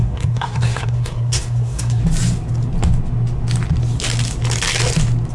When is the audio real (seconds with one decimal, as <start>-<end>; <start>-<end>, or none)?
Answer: 2.0-5.3